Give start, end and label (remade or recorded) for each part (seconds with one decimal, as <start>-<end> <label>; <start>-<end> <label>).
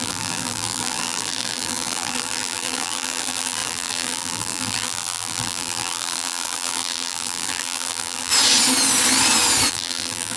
0.0-8.3 remade; 8.3-9.7 recorded; 9.7-10.4 remade